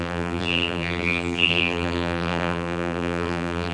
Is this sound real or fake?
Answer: fake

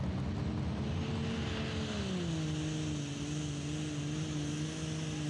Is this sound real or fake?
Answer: real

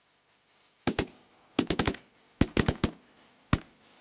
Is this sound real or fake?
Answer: real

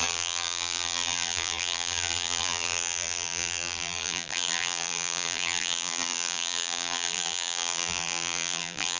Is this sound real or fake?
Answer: fake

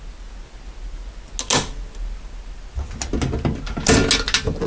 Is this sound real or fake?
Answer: real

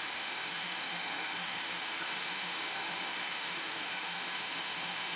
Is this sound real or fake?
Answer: fake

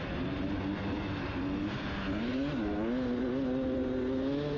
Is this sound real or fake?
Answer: real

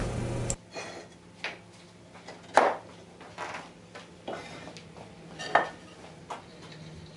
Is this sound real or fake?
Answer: real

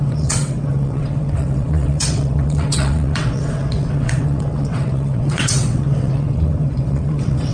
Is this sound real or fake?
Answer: fake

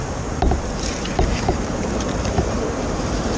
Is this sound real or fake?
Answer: fake